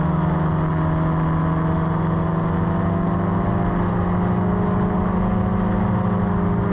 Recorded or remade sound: recorded